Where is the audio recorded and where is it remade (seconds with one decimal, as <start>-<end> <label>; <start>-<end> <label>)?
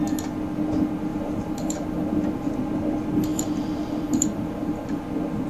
0.0-1.1 recorded; 1.1-2.5 remade; 2.5-3.3 recorded; 3.3-5.0 remade; 5.0-5.5 recorded